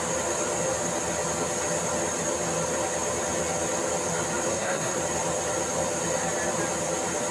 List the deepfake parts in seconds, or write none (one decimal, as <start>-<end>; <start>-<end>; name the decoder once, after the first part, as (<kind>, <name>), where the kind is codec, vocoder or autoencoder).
4.5-5.0 (codec, SNAC)